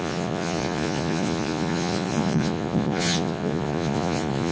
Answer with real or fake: fake